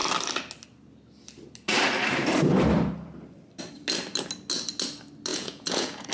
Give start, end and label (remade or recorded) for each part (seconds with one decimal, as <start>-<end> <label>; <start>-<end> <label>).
0.0-5.3 recorded; 5.3-6.1 remade